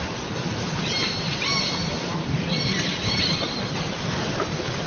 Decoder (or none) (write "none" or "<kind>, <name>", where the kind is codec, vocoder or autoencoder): vocoder, BigVGAN v2